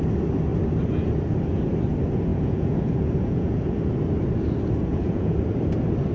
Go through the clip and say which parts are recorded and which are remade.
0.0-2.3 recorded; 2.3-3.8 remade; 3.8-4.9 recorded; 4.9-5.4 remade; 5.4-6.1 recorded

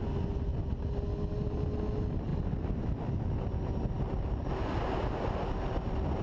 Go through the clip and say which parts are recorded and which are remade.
0.0-6.2 recorded